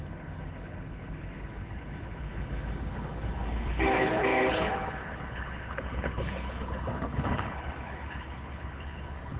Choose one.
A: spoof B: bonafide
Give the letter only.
A